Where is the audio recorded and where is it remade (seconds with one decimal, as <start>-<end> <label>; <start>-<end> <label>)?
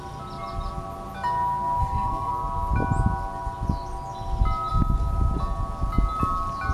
0.0-1.8 recorded; 1.8-2.3 remade; 2.3-6.7 recorded